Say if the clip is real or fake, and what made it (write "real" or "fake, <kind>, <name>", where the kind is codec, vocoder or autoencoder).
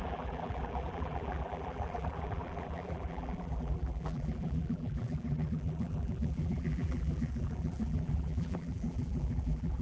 fake, vocoder, BigVGAN v2